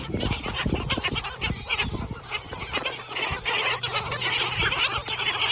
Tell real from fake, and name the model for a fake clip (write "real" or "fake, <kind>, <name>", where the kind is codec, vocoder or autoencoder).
real